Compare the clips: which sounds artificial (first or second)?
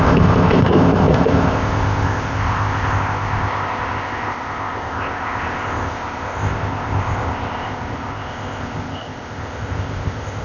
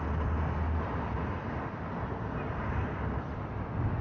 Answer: first